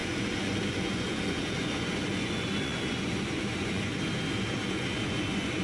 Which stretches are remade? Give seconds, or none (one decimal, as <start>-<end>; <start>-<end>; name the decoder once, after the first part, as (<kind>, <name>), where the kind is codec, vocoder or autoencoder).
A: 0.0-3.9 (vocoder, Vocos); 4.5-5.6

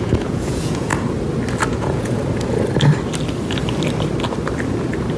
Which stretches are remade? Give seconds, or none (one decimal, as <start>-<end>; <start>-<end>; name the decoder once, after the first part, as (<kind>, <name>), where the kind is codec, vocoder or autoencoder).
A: 0.0-0.9 (vocoder, Vocos); 1.7-2.2

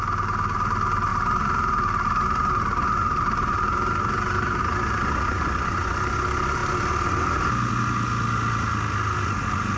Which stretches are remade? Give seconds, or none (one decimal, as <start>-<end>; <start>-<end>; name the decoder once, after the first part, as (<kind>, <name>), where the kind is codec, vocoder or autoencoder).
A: none

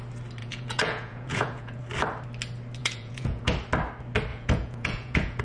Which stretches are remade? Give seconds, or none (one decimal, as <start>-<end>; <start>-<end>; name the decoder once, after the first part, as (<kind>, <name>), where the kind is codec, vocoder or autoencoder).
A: 0.4-1.8 (vocoder, Vocos); 2.8-3.5; 4.3-5.4

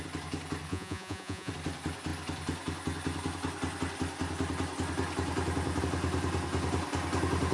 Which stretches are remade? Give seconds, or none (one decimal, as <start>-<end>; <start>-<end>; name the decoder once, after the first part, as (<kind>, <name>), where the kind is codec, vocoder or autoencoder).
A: 0.7-1.5 (vocoder, Vocos)

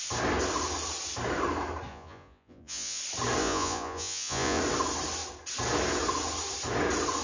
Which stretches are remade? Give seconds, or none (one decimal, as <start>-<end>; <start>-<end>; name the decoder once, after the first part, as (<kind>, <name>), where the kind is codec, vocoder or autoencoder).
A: 1.9-3.0 (vocoder, Vocos); 3.4-4.6